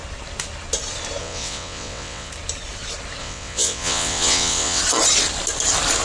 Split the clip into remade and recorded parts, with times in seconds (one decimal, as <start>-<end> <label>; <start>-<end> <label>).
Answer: 0.0-1.2 recorded; 1.2-2.3 remade; 2.3-3.2 recorded; 3.2-4.8 remade; 4.8-6.0 recorded